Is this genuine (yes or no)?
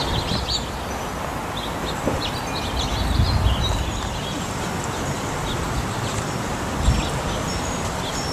yes